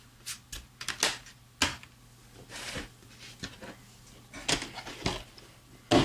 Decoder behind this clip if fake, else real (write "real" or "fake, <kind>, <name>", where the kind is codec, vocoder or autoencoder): real